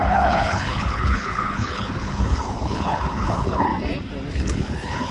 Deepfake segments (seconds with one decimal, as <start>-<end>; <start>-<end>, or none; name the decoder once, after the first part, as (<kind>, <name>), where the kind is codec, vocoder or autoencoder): 0.0-3.7 (codec, HILCodec); 4.3-5.1